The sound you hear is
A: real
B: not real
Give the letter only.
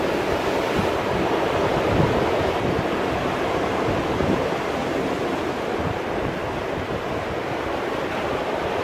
A